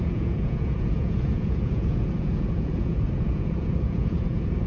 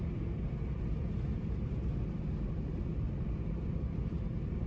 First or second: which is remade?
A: first